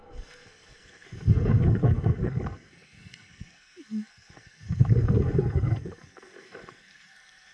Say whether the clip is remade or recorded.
remade